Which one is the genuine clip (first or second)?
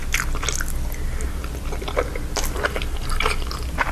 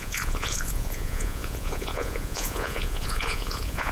first